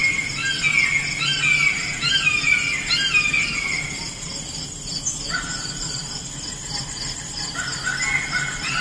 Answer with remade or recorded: recorded